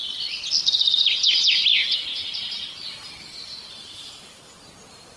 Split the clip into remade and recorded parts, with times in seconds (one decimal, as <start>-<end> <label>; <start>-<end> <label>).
0.0-0.5 remade; 0.5-2.2 recorded; 2.2-4.6 remade; 4.6-5.2 recorded